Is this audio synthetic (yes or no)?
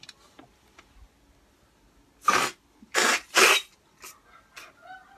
no